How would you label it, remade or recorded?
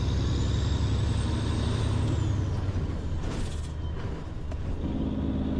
recorded